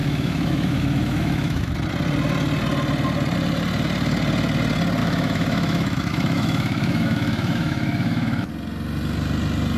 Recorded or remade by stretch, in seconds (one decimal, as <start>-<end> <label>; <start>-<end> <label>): 0.0-1.7 remade; 1.7-5.0 recorded; 5.0-8.5 remade; 8.5-9.8 recorded